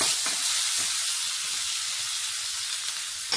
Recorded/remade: recorded